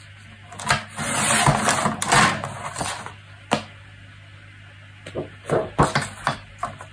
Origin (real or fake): real